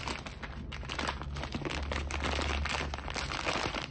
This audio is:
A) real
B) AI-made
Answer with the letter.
A